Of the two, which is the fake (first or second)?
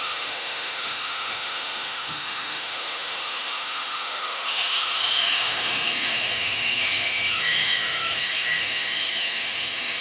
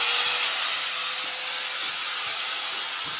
first